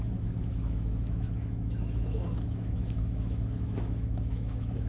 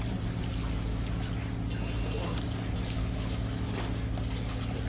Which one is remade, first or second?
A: first